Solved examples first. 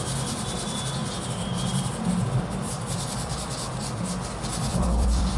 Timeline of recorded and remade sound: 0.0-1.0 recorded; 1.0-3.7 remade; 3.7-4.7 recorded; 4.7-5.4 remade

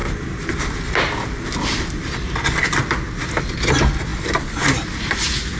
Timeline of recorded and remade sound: 0.0-5.6 recorded

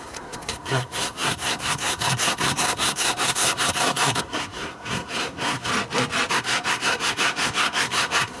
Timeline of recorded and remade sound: 0.0-5.7 remade; 5.7-6.3 recorded; 6.3-8.4 remade

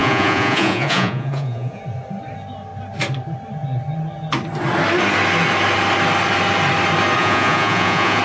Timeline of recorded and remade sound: 0.0-1.8 remade; 1.8-7.2 recorded; 7.2-8.2 remade

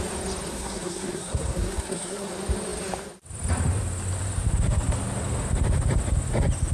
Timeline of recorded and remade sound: 0.0-0.5 recorded; 0.5-2.3 remade; 2.3-6.7 recorded

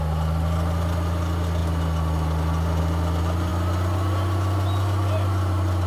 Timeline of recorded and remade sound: 0.0-5.9 recorded